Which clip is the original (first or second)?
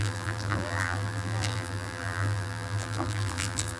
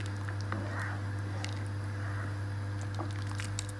second